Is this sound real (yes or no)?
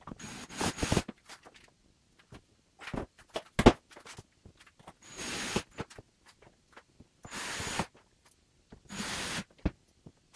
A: yes